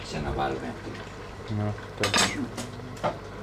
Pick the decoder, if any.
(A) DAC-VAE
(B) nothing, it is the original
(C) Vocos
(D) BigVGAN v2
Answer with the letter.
B